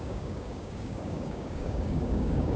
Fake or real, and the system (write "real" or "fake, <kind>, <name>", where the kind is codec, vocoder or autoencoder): fake, codec, DAC